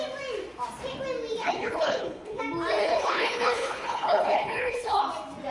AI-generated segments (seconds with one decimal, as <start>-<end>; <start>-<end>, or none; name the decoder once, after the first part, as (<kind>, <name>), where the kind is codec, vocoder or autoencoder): 1.4-2.4 (codec, HILCodec); 2.8-5.0